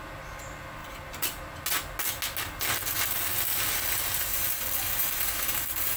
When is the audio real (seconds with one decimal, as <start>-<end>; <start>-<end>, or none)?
0.0-0.8; 1.4-4.3; 5.3-6.0